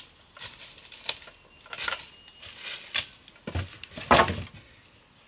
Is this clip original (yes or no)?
yes